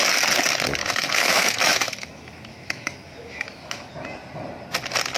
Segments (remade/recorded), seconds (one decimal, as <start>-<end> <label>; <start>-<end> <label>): 0.0-0.8 recorded; 0.8-3.9 remade; 3.9-5.2 recorded